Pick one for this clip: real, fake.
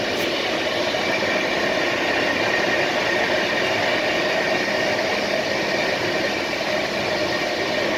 real